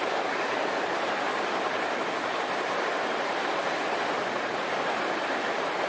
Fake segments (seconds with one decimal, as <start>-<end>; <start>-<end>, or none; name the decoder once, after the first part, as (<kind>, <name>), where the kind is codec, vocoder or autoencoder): none